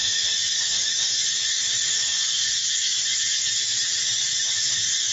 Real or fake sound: fake